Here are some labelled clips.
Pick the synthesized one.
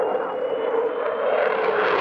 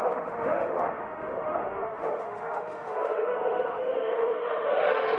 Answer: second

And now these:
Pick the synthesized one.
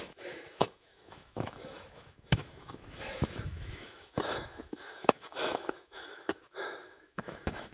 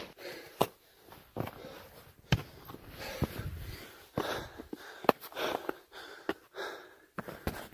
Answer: first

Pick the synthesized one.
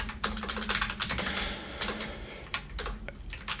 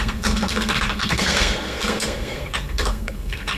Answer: second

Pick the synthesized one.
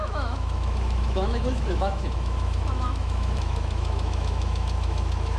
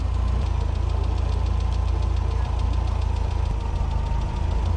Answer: first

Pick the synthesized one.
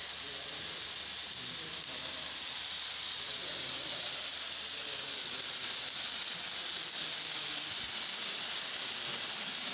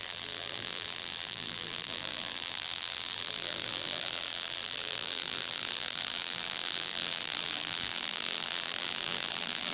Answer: second